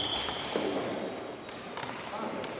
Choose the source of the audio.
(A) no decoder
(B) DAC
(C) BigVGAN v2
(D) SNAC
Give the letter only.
A